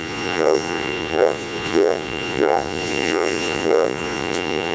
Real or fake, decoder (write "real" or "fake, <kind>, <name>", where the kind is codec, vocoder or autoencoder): fake, vocoder, Vocos